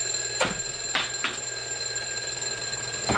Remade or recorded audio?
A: recorded